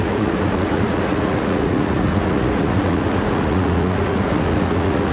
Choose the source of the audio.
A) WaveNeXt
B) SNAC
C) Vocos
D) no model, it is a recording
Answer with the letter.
C